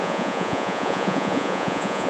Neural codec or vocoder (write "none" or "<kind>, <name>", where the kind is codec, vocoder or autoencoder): vocoder, Vocos